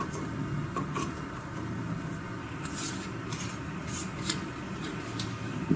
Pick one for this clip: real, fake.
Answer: real